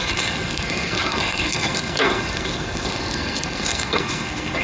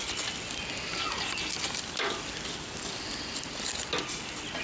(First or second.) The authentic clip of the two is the second